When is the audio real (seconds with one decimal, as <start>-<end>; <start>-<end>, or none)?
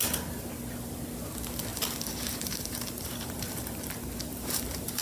0.0-1.7; 3.8-4.3